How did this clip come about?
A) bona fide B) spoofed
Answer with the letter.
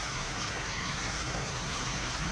B